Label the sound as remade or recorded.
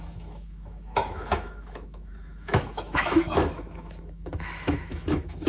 remade